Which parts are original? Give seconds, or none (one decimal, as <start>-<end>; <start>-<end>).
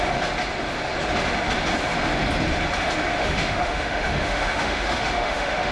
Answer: 0.0-3.1